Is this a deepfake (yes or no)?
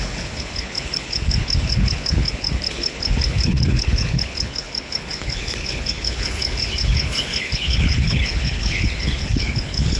yes